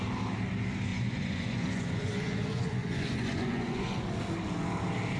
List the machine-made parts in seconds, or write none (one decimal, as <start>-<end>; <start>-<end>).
0.9-4.0